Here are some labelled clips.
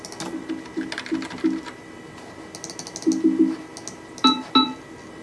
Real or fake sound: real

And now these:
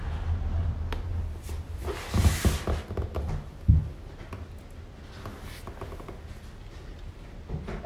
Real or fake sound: real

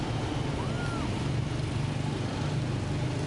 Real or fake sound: real